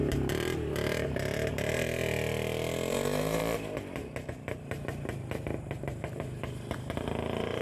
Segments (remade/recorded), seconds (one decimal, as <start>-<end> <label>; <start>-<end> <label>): 0.0-2.0 remade; 2.0-2.9 recorded; 2.9-3.4 remade; 3.4-4.3 recorded; 4.3-7.6 remade